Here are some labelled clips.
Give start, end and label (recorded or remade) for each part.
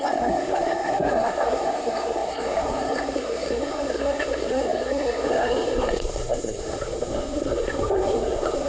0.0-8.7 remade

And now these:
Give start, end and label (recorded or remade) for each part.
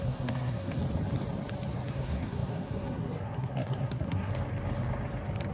0.0-0.8 remade; 0.8-1.9 recorded; 1.9-4.3 remade; 4.3-5.5 recorded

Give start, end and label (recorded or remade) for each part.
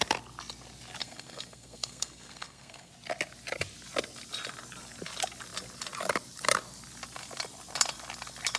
0.0-1.0 recorded; 1.0-2.9 remade; 2.9-8.6 recorded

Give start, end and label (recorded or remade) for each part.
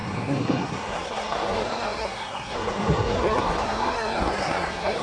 0.0-5.0 remade